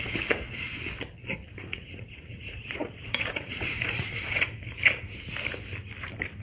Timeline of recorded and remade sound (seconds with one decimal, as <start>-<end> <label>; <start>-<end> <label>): 0.0-1.7 recorded; 1.7-4.6 remade; 4.6-6.4 recorded